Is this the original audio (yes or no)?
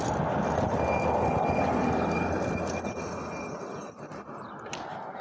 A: yes